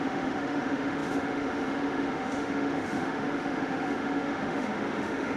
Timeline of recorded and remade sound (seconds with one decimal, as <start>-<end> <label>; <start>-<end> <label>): 0.0-5.4 remade